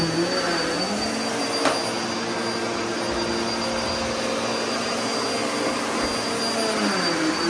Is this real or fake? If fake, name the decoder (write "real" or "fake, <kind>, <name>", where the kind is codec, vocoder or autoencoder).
real